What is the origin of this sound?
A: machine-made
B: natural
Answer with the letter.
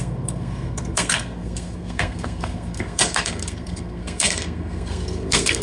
A